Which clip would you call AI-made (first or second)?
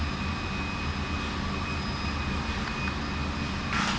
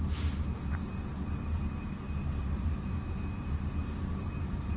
second